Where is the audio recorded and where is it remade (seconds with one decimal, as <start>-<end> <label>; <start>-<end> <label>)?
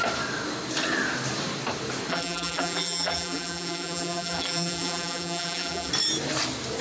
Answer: 0.0-2.1 recorded; 2.1-5.9 remade; 5.9-6.8 recorded